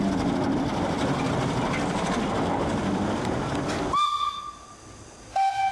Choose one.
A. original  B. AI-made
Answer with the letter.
A